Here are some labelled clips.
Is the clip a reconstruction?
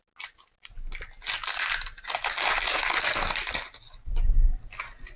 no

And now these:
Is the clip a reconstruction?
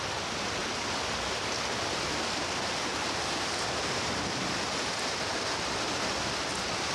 no